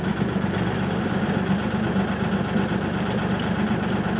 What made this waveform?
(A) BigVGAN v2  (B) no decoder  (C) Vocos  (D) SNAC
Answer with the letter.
B